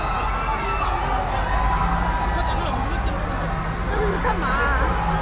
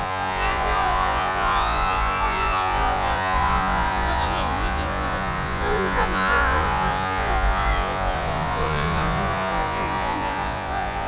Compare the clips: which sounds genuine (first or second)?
first